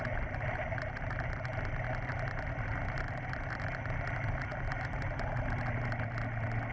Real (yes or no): yes